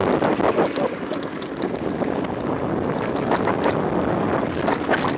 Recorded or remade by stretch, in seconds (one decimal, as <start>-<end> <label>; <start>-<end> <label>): 0.0-5.2 recorded